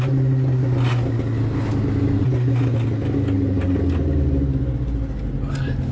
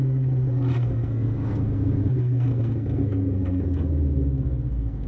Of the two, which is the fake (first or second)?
second